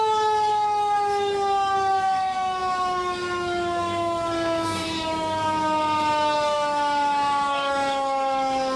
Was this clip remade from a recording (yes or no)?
yes